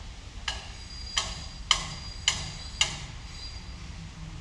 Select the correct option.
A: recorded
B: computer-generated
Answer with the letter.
A